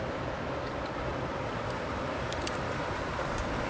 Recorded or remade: recorded